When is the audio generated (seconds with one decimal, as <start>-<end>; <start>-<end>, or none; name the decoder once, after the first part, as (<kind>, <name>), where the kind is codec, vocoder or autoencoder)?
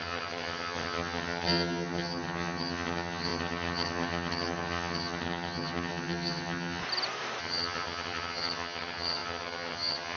0.0-6.8 (vocoder, HiFi-GAN); 7.4-10.2